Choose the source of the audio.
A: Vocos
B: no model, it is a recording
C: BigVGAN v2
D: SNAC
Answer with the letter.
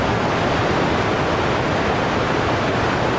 B